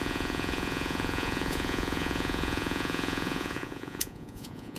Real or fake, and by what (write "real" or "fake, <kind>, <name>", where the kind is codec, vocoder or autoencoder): fake, vocoder, Vocos